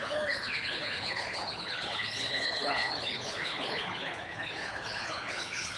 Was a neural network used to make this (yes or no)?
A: yes